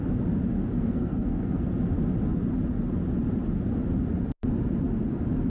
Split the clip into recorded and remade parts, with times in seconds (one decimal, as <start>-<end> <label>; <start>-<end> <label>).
0.0-0.6 recorded; 0.6-1.7 remade; 1.7-5.5 recorded